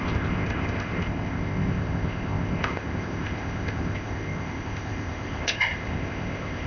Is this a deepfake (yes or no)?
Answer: yes